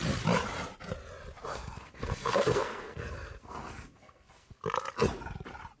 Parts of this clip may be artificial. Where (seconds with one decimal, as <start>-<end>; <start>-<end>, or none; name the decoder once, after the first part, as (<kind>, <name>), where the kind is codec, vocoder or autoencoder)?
1.5-4.6 (codec, SNAC)